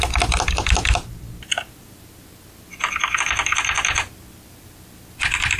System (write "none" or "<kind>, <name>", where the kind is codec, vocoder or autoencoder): none